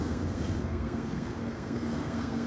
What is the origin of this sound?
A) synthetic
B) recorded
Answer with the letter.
A